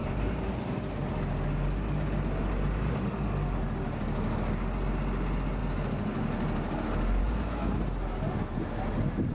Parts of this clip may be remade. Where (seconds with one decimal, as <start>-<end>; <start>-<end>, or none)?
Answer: 0.0-0.6; 2.4-3.0